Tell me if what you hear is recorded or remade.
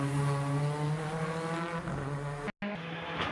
recorded